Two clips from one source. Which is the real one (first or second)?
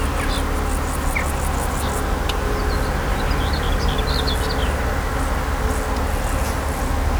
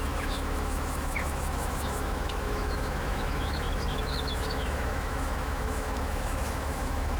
first